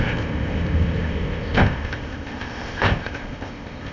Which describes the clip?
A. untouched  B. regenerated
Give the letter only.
B